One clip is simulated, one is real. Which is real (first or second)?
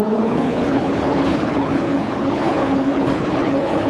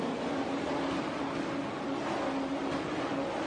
second